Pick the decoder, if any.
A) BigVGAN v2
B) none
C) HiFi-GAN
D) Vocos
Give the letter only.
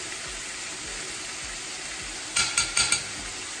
B